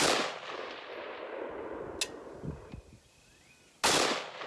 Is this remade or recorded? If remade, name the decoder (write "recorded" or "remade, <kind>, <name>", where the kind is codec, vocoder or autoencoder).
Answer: recorded